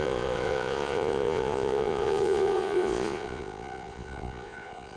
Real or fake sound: fake